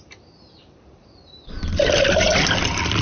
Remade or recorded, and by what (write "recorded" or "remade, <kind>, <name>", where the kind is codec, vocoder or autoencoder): recorded